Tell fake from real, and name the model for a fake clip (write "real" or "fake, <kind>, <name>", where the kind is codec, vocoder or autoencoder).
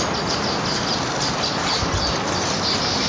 real